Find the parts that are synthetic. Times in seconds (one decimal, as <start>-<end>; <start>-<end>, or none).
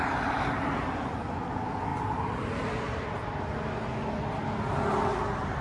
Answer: none